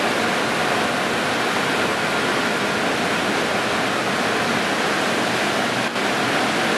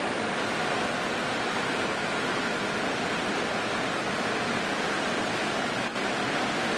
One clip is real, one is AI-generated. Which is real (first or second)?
first